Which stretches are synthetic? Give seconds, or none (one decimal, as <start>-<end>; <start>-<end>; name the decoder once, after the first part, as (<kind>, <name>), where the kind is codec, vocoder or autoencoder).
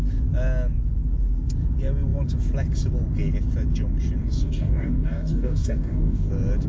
4.2-6.3 (codec, DAC)